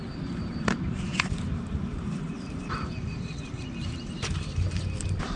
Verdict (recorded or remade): remade